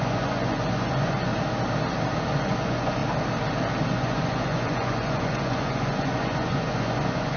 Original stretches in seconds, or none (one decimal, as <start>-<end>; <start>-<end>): 1.3-2.3; 3.0-3.9